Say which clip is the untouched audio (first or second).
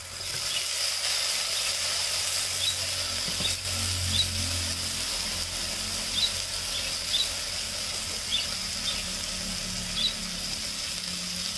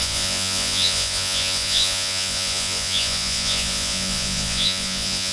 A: first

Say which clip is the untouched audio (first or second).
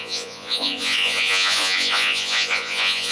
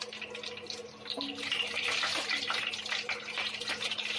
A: second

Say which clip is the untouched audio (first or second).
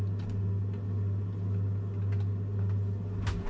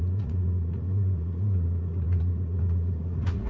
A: first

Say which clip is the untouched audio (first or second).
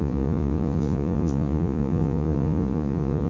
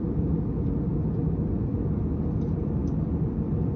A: second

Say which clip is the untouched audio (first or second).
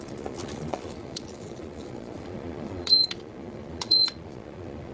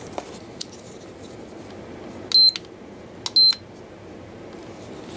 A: second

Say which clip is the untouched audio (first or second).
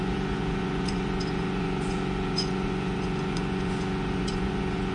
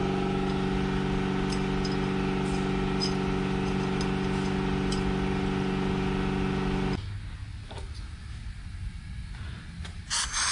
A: second